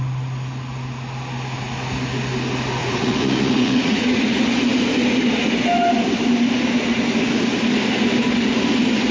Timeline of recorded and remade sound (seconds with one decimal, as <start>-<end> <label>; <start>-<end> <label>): 0.0-2.8 recorded; 2.8-4.2 remade; 4.2-9.1 recorded